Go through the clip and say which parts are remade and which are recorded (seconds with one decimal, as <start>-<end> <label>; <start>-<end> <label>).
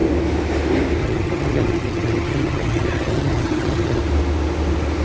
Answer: 0.0-1.0 recorded; 1.0-4.0 remade; 4.0-5.0 recorded